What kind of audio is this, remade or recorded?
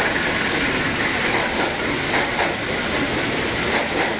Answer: recorded